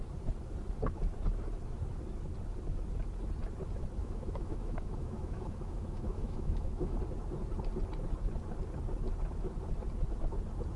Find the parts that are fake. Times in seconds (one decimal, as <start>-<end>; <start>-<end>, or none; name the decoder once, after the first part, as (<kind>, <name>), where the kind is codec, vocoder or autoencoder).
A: 4.0-7.0 (autoencoder, DAC-VAE)